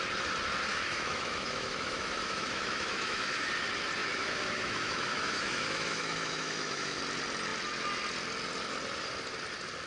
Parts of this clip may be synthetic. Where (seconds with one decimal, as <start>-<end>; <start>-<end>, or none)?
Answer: 0.7-3.5; 4.0-7.0